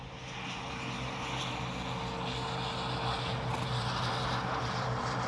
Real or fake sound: real